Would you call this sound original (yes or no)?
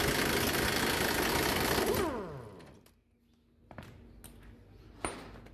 yes